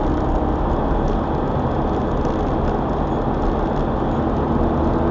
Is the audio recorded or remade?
recorded